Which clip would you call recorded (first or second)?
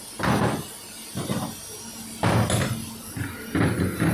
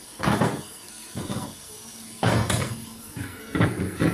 first